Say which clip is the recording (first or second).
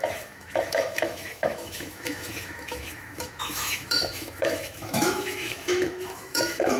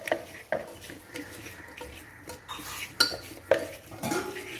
second